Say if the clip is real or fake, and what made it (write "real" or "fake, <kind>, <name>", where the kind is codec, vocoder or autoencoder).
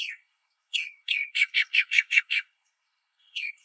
fake, codec, SNAC